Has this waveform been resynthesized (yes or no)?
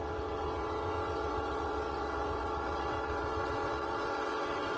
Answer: yes